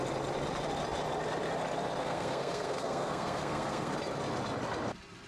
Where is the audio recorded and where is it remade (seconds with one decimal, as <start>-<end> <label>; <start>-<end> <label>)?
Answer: 0.0-2.0 recorded; 2.0-3.9 remade; 3.9-5.3 recorded